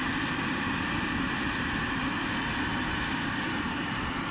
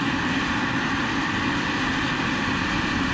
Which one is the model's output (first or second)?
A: first